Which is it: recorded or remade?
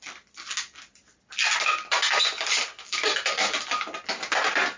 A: recorded